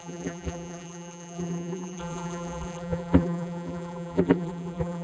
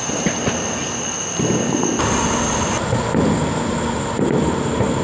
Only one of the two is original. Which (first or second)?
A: second